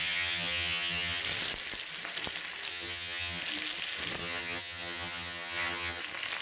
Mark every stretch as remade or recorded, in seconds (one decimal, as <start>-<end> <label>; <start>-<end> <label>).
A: 0.0-1.2 remade; 1.2-2.7 recorded; 2.7-3.4 remade; 3.4-4.2 recorded; 4.2-6.0 remade; 6.0-6.4 recorded